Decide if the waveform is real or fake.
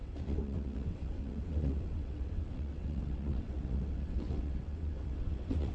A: fake